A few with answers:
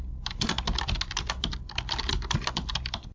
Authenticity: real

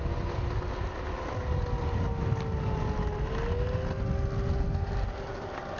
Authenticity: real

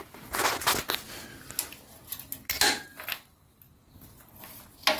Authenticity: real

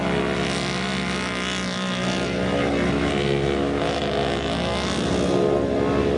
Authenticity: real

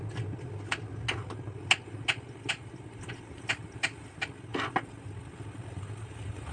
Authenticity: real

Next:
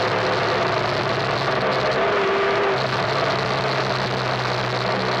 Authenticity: real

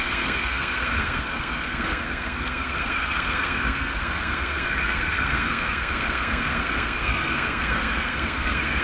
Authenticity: fake